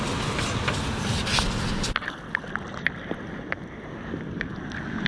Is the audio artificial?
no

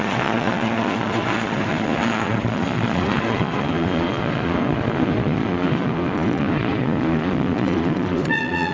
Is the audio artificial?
yes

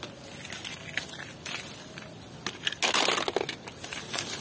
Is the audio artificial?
no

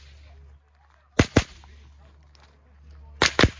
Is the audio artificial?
no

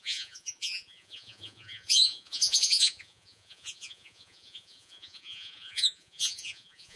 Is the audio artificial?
yes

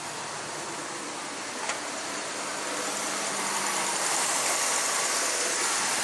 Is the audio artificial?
no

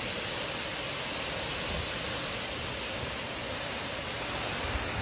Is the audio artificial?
no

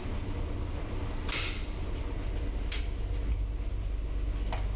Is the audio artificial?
no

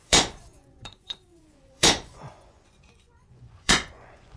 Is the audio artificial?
yes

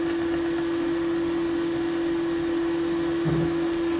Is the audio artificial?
no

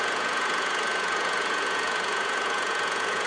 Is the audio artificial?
yes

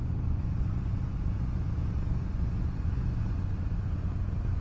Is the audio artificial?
yes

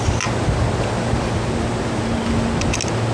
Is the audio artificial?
no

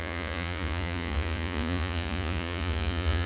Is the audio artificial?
yes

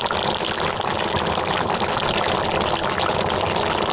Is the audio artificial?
no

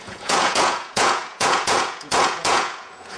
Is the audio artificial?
yes